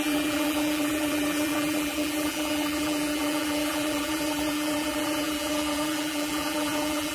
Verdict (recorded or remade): remade